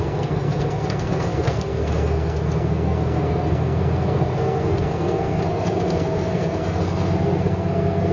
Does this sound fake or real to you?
fake